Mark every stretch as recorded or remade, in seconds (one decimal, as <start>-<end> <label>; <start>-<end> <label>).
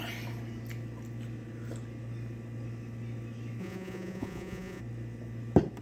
0.0-3.6 recorded; 3.6-4.8 remade; 4.8-5.8 recorded